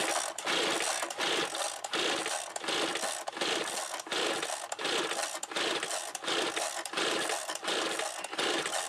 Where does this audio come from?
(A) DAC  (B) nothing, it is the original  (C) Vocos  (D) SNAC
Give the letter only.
B